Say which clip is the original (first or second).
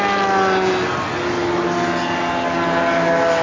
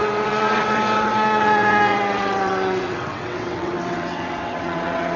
first